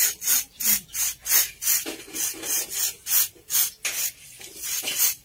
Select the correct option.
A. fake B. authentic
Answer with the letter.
B